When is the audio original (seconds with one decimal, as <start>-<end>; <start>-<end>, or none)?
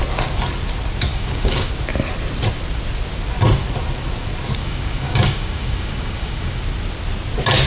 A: 0.0-1.1; 1.7-4.6; 6.6-7.7